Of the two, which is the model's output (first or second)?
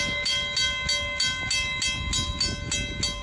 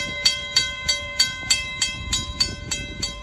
second